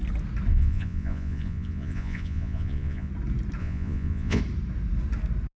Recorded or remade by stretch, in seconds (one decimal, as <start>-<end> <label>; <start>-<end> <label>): 0.0-0.5 recorded; 0.5-3.1 remade; 3.1-3.6 recorded; 3.6-4.4 remade; 4.4-5.6 recorded